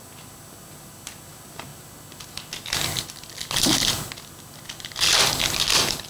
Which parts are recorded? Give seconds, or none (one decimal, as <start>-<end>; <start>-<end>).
0.0-6.1